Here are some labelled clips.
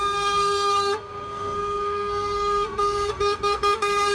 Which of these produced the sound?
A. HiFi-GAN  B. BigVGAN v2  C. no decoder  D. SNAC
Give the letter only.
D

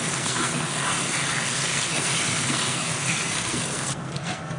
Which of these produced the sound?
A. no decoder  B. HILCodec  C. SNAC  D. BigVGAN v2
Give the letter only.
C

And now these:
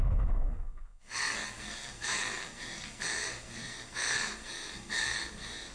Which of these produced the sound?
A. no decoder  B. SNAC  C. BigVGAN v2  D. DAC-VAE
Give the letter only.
B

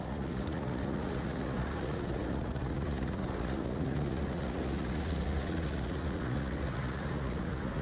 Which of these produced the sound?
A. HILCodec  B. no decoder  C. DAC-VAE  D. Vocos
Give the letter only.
D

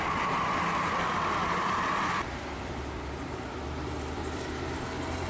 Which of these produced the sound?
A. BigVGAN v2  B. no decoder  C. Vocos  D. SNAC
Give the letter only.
A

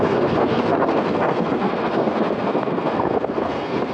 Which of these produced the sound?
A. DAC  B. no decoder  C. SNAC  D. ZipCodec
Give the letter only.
C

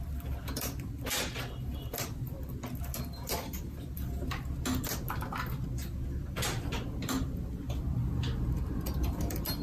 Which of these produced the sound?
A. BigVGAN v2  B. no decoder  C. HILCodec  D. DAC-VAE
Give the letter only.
B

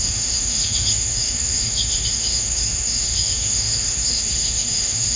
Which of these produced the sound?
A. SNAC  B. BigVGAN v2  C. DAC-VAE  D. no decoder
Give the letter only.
C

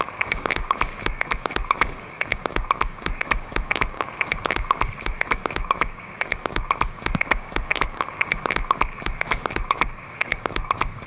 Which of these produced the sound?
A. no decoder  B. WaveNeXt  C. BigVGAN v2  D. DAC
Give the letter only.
D